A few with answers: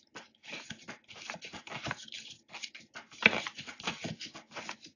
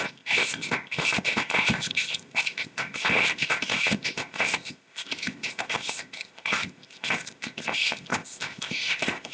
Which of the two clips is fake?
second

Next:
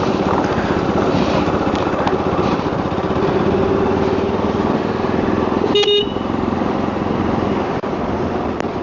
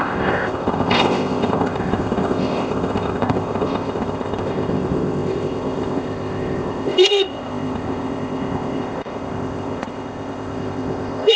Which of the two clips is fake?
second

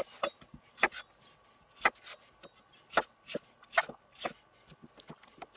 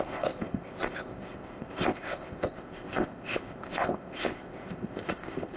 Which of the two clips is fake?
second